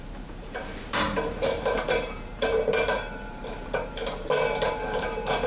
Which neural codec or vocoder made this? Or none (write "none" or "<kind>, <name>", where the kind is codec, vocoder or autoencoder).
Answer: vocoder, BigVGAN v2